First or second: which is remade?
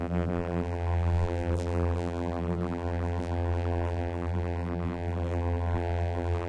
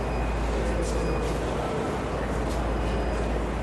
first